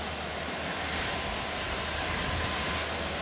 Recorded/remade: recorded